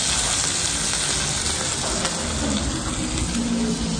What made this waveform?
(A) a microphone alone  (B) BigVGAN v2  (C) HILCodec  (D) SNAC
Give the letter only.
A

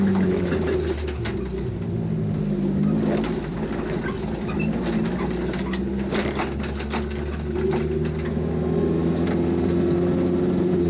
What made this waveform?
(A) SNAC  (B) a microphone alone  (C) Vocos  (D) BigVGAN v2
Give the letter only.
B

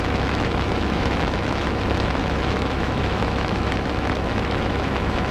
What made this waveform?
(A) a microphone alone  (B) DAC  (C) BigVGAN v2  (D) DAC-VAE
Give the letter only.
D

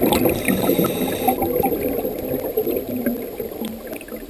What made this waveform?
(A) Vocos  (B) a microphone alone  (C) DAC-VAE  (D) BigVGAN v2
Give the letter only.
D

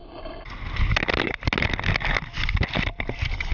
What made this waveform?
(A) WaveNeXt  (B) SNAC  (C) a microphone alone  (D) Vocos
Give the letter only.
C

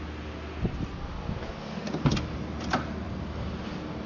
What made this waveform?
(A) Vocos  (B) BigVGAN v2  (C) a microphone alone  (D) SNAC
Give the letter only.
C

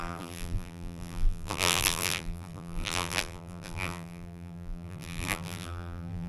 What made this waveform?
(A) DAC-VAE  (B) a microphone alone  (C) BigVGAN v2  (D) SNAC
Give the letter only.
C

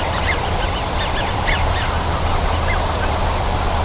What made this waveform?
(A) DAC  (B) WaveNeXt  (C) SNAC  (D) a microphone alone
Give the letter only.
D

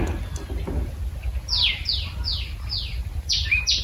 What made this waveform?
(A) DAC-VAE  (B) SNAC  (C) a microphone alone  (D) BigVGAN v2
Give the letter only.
C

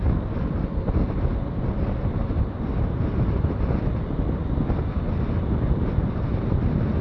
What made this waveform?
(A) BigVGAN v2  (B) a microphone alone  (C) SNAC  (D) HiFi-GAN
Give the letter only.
B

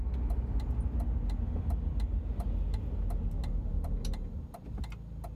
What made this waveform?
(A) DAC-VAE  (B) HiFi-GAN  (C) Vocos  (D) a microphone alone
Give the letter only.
D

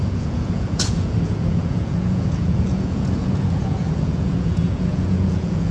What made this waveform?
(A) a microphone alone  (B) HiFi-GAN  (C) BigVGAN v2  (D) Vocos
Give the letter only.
D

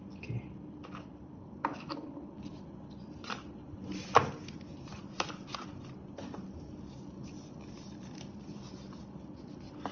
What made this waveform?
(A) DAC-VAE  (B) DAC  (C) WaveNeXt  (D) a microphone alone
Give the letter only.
D